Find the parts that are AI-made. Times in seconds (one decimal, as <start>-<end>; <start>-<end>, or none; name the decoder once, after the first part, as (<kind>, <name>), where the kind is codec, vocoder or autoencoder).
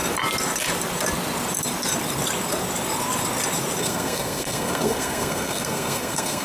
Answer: 3.8-6.4 (codec, SNAC)